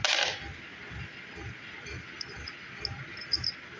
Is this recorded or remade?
recorded